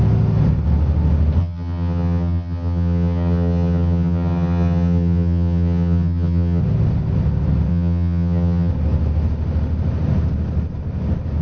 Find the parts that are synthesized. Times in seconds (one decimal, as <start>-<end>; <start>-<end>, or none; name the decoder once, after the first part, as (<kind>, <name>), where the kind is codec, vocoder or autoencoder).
1.4-6.6 (vocoder, HiFi-GAN); 7.7-8.7